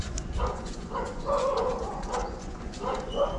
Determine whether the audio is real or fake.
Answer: fake